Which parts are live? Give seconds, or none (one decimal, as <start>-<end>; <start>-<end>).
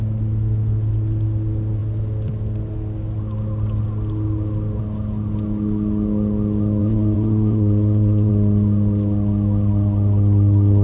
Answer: 0.0-6.8; 8.3-10.8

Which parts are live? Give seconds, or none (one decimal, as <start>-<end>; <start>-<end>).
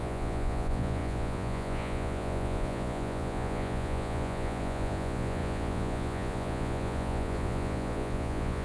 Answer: none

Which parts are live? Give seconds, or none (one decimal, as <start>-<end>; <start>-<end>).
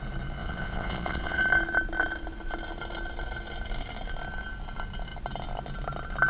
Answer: 0.0-0.4; 1.4-6.3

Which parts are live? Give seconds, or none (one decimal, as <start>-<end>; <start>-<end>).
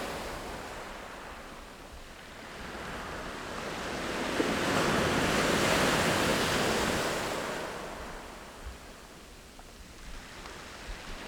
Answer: 0.0-11.3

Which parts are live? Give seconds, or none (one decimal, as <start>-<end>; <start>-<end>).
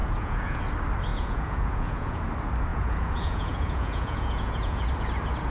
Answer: 0.6-1.1; 2.2-2.7; 4.9-5.5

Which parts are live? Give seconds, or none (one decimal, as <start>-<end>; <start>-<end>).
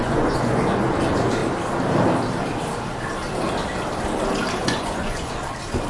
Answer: 0.6-4.6; 5.3-5.9